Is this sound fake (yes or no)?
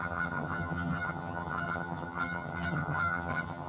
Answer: yes